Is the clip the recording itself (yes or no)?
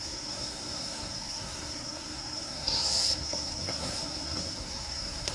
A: no